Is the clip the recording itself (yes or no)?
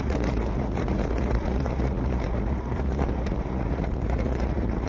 no